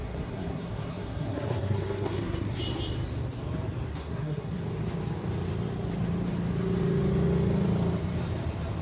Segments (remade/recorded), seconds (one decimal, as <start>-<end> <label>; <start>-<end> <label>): 0.0-2.6 remade; 2.6-3.9 recorded; 3.9-4.6 remade; 4.6-8.8 recorded

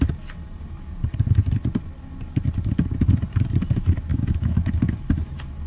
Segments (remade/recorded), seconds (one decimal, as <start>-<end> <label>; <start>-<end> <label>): 0.0-4.1 recorded; 4.1-4.7 remade; 4.7-5.7 recorded

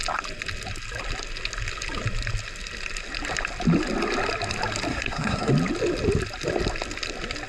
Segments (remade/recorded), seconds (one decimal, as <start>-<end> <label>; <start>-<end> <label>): 0.0-4.9 recorded; 4.9-5.5 remade; 5.5-7.5 recorded

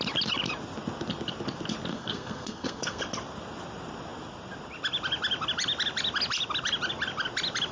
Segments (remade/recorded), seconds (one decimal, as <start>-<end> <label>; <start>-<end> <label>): 0.0-1.9 recorded; 1.9-3.0 remade; 3.0-7.7 recorded

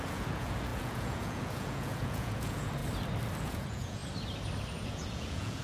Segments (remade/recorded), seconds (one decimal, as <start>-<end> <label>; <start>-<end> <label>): 0.0-2.8 remade; 2.8-3.4 recorded; 3.4-4.0 remade; 4.0-4.7 recorded; 4.7-5.6 remade

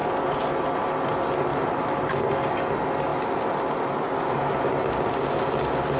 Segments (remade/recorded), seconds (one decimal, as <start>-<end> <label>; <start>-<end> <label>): 0.0-1.5 recorded; 1.5-2.2 remade; 2.2-6.0 recorded

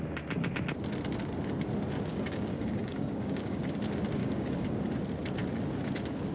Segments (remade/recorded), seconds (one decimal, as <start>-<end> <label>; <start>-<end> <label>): 0.0-2.1 recorded; 2.1-3.6 remade; 3.6-4.2 recorded; 4.2-4.9 remade; 4.9-6.3 recorded

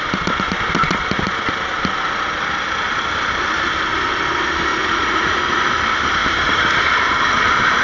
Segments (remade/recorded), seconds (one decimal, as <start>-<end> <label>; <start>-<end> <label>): 0.0-4.7 recorded; 4.7-5.4 remade; 5.4-7.8 recorded